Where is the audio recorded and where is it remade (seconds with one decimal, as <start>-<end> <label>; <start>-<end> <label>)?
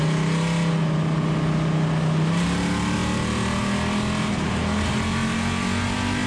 0.0-6.3 recorded